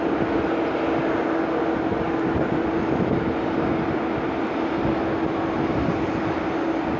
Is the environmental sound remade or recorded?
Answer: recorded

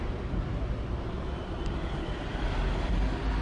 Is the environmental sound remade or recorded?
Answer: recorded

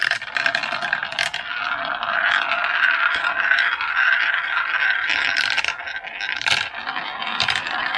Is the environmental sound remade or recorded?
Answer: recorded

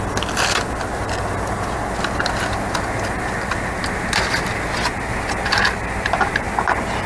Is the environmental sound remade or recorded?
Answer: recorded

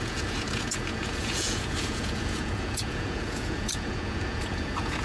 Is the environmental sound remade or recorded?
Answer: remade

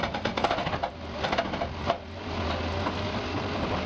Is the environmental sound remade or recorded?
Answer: recorded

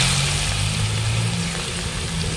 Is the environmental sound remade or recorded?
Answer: recorded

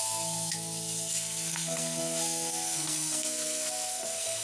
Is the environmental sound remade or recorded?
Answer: remade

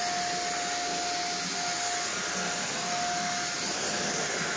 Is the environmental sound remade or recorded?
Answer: recorded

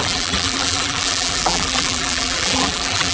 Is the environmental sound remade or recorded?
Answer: remade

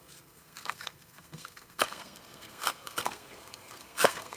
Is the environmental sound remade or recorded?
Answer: remade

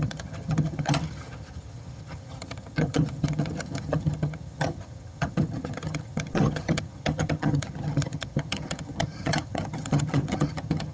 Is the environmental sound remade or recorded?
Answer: remade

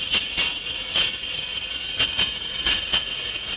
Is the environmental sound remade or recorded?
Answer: remade